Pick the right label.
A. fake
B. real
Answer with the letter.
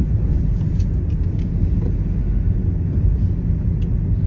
B